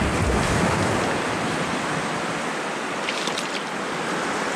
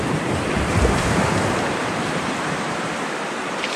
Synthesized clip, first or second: second